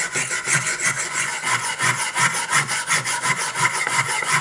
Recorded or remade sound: remade